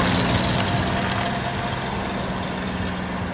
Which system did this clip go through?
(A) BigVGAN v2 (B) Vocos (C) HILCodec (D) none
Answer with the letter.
D